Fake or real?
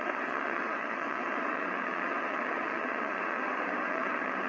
fake